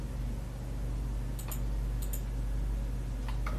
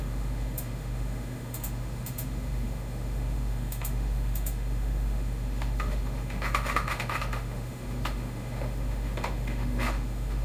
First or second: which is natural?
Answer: first